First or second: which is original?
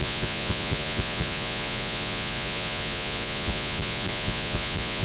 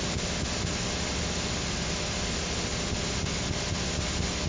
second